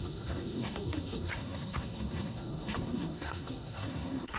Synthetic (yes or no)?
yes